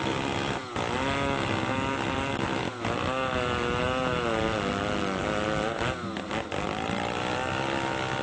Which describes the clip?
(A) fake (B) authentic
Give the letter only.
B